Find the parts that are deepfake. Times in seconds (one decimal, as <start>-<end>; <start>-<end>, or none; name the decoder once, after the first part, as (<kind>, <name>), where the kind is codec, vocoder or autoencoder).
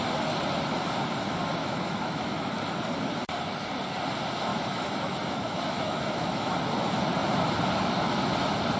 1.6-2.5 (autoencoder, DAC-VAE); 4.5-6.5